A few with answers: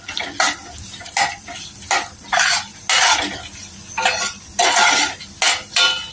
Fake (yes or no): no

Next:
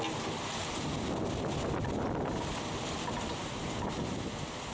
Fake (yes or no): no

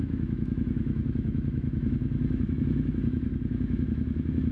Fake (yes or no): yes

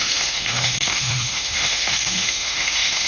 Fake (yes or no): yes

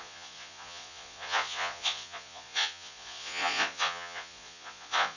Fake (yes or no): yes